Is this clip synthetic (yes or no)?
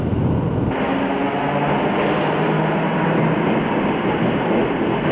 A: no